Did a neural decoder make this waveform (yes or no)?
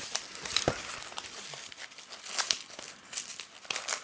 no